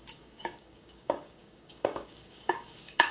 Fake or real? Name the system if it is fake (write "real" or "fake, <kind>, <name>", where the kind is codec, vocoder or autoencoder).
fake, codec, DAC